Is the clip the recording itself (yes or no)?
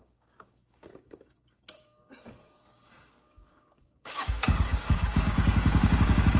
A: no